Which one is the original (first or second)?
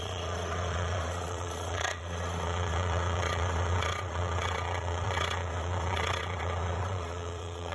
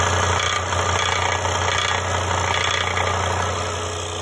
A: second